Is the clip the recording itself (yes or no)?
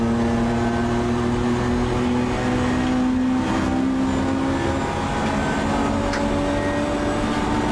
yes